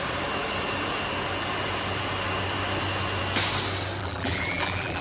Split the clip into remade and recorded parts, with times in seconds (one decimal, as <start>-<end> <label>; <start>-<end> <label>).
0.0-4.0 recorded; 4.0-5.0 remade